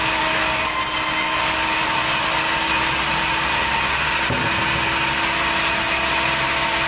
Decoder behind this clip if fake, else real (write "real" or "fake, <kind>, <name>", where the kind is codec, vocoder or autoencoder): real